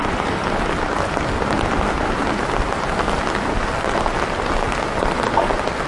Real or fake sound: real